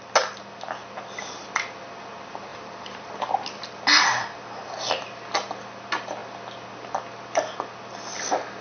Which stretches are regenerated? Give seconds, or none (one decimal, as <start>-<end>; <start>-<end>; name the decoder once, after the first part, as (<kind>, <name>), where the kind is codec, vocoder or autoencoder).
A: 2.5-3.1 (vocoder, BigVGAN v2)